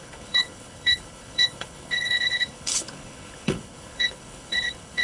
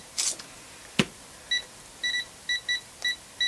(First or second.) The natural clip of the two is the second